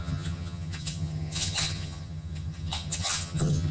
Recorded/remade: remade